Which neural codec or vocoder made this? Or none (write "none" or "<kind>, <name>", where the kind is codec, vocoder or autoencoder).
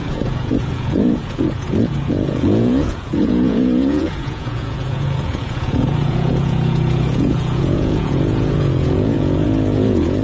vocoder, Vocos